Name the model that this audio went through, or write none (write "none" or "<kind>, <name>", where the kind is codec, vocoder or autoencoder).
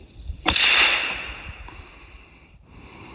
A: vocoder, BigVGAN v2